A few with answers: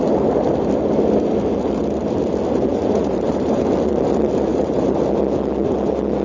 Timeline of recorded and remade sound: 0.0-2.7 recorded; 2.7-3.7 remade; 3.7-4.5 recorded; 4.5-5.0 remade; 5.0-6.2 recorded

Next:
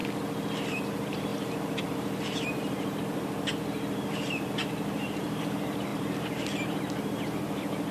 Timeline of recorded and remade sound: 0.0-0.7 recorded; 0.7-1.3 remade; 1.3-1.8 recorded; 1.8-7.9 remade

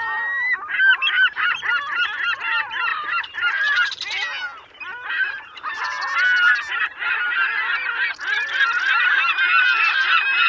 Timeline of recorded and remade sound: 0.0-0.9 recorded; 0.9-1.5 remade; 1.5-2.9 recorded; 2.9-3.9 remade; 3.9-4.6 recorded; 4.6-5.8 remade; 5.8-10.5 recorded

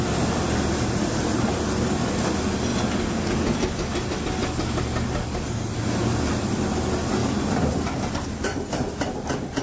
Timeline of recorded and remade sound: 0.0-7.2 recorded; 7.2-8.1 remade; 8.1-9.6 recorded